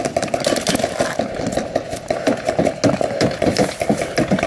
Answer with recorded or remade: recorded